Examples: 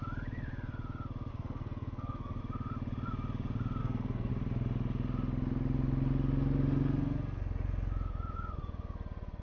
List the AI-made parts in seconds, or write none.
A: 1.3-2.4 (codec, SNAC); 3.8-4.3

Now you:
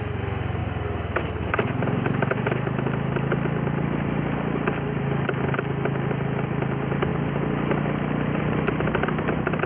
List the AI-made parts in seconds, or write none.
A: none

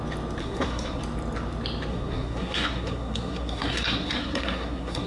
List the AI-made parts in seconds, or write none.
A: 0.4-1.0 (codec, SNAC); 1.9-5.1